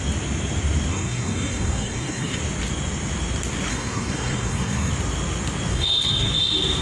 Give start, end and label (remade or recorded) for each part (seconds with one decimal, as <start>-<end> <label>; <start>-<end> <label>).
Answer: 0.0-0.9 recorded; 0.9-2.4 remade; 2.4-3.7 recorded; 3.7-4.9 remade; 4.9-5.7 recorded; 5.7-6.3 remade; 6.3-6.8 recorded